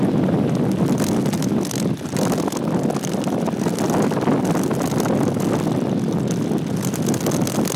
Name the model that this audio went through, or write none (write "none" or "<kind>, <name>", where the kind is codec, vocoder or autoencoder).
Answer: none